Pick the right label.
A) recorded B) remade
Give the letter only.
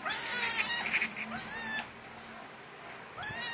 A